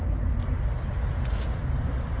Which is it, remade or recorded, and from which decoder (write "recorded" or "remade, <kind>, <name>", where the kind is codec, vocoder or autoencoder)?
recorded